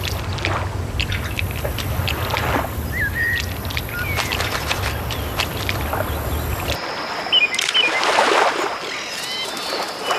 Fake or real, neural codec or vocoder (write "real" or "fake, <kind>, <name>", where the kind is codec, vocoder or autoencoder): real